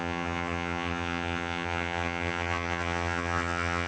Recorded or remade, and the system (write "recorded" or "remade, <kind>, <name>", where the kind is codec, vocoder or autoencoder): remade, vocoder, HiFi-GAN